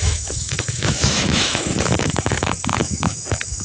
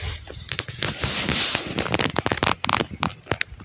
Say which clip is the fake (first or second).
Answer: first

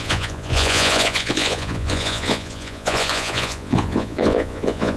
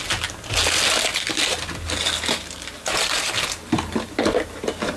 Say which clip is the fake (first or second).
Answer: first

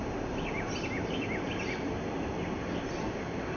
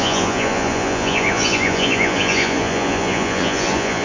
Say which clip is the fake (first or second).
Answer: second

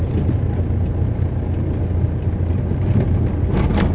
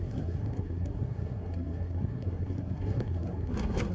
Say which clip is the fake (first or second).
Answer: second